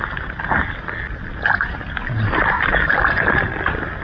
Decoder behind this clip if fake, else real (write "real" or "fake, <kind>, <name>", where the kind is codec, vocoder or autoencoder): real